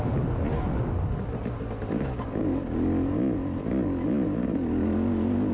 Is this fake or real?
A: real